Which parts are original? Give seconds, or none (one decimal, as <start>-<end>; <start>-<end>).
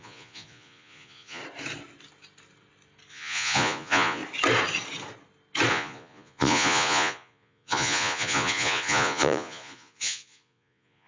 1.4-3.1; 4.2-5.7